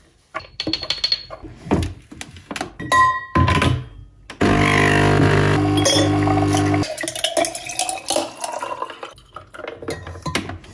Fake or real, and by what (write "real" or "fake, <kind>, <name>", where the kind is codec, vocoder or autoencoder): real